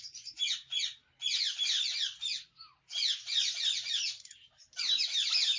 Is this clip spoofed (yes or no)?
no